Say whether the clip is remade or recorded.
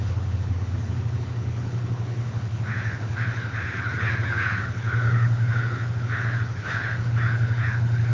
remade